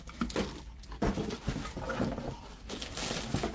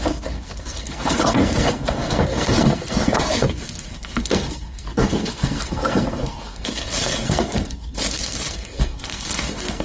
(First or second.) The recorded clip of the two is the first